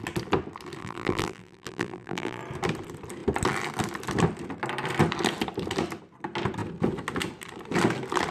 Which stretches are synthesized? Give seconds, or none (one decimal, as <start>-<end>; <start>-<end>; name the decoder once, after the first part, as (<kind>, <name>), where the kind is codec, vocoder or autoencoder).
0.8-2.4 (vocoder, BigVGAN v2)